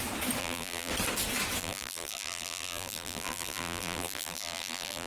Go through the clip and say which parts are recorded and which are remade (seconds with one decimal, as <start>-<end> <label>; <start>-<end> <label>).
0.0-0.4 recorded; 0.4-0.9 remade; 0.9-1.6 recorded; 1.6-5.1 remade

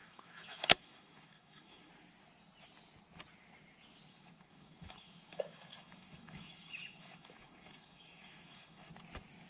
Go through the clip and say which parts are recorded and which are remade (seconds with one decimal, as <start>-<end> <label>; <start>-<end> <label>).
0.0-1.9 remade; 1.9-4.1 recorded; 4.1-8.9 remade; 8.9-9.5 recorded

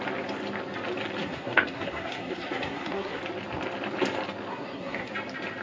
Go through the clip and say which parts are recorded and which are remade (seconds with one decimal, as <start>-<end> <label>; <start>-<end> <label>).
0.0-1.2 recorded; 1.2-3.2 remade; 3.2-4.5 recorded; 4.5-5.1 remade; 5.1-5.6 recorded

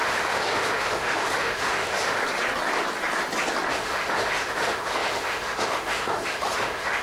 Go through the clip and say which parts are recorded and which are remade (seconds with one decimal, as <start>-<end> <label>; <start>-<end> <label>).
0.0-2.2 remade; 2.2-3.7 recorded; 3.7-7.0 remade

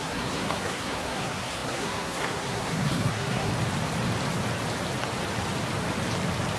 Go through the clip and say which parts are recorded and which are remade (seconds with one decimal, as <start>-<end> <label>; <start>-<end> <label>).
0.0-3.5 remade; 3.5-6.6 recorded

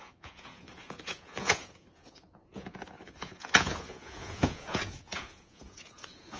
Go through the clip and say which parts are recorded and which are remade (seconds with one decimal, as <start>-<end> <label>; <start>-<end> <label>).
0.0-6.4 remade

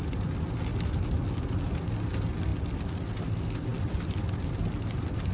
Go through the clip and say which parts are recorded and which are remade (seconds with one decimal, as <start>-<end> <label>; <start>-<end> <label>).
0.0-3.7 recorded; 3.7-5.3 remade

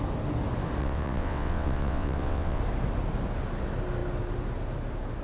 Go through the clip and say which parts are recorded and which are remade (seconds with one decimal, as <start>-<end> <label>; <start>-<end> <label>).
0.0-0.8 recorded; 0.8-2.6 remade; 2.6-5.2 recorded